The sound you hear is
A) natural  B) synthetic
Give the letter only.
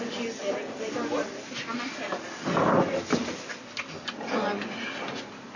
A